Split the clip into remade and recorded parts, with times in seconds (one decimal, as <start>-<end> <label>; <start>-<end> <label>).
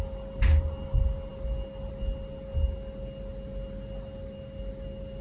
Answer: 0.0-5.2 recorded